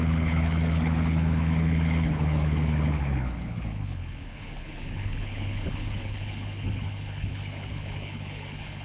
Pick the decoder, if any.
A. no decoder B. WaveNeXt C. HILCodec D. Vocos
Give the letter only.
C